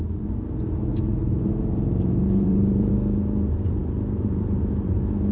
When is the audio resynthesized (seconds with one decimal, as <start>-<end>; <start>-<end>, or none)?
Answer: 0.9-2.9